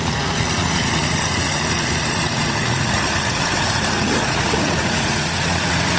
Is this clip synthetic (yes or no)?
yes